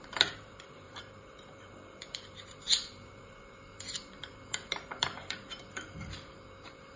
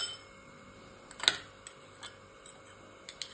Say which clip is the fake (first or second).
first